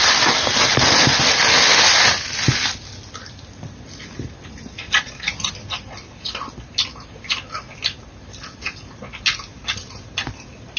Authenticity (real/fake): real